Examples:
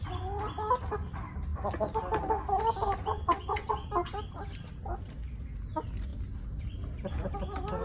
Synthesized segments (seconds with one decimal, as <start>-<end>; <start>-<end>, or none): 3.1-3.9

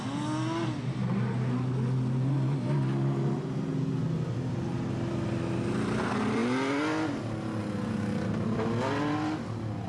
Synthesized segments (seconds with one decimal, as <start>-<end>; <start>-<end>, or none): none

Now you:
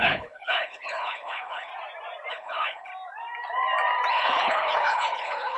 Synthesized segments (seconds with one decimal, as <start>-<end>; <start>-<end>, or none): 0.0-1.7; 2.3-2.9; 4.1-5.6

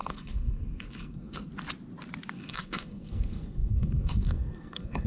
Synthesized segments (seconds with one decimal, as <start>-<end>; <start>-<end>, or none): 0.0-1.5; 2.3-5.1

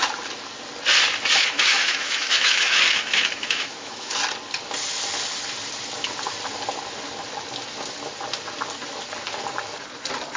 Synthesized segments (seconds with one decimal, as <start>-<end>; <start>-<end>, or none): 1.4-4.1

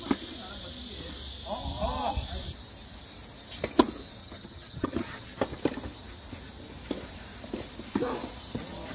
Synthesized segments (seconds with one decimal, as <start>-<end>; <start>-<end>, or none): 4.2-5.4